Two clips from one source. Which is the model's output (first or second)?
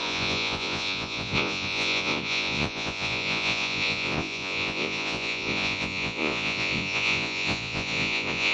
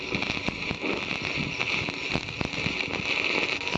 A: first